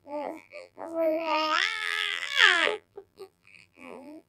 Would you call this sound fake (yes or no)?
yes